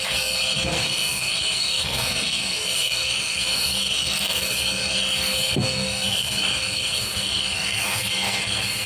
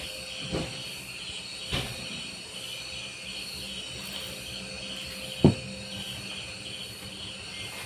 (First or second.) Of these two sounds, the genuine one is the second